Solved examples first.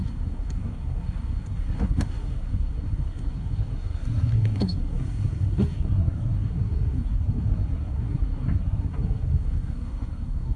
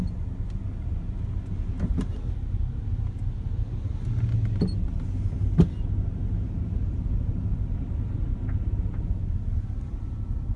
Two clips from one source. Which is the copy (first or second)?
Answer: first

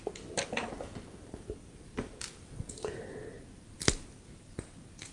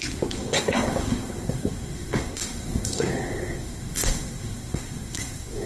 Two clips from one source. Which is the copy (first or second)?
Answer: second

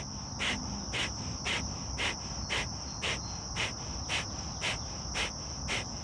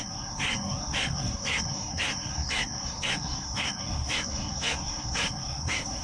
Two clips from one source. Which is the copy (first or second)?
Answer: second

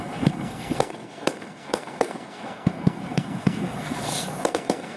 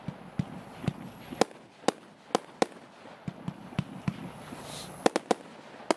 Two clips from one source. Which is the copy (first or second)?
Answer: first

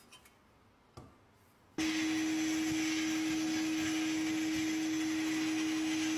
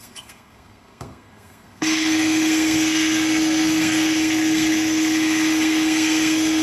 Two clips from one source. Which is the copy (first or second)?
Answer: second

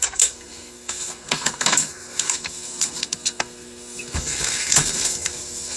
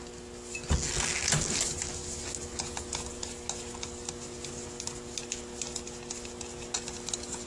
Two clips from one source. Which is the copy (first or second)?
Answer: first